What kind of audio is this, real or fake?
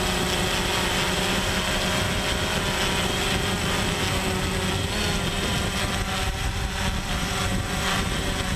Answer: real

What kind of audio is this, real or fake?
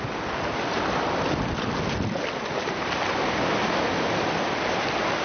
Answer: real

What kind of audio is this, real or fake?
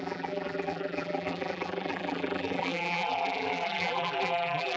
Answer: fake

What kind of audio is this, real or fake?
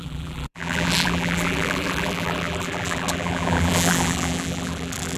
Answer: fake